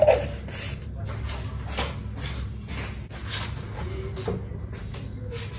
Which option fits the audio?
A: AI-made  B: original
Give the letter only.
B